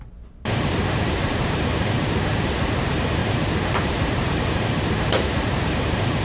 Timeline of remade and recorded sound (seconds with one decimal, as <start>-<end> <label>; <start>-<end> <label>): 0.0-6.2 remade